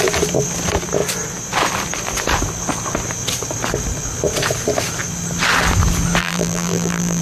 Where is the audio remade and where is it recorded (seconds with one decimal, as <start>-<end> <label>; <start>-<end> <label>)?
0.0-6.2 recorded; 6.2-7.2 remade